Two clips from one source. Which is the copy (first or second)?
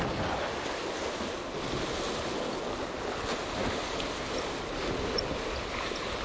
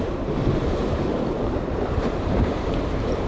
second